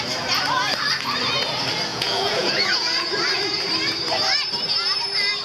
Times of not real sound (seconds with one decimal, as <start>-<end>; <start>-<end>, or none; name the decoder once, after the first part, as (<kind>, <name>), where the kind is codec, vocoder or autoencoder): 1.9-3.1 (vocoder, Vocos)